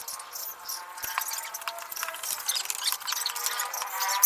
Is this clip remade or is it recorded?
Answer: recorded